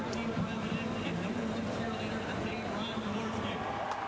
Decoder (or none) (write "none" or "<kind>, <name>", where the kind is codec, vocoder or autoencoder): none